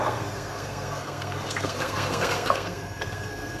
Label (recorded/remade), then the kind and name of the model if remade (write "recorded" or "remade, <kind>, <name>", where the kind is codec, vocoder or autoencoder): remade, codec, SNAC